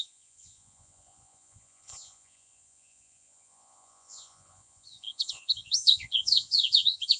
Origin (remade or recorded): remade